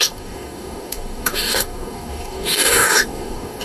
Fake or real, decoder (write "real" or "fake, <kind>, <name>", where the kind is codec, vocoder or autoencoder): fake, codec, DAC